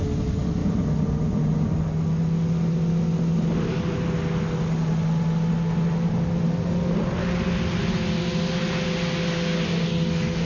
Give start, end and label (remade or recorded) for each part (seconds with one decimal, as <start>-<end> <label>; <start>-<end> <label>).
0.0-10.4 recorded